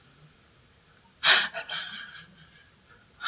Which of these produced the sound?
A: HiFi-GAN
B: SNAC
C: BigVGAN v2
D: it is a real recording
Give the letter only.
D